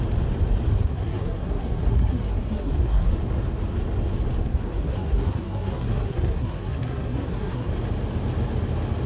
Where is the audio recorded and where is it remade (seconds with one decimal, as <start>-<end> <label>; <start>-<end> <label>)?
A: 0.0-0.7 recorded; 0.7-3.1 remade; 3.1-4.4 recorded; 4.4-7.7 remade; 7.7-9.1 recorded